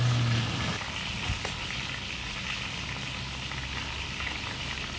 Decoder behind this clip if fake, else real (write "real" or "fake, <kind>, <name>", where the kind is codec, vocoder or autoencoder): real